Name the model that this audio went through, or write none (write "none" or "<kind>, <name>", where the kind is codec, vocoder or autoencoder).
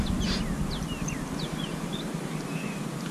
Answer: none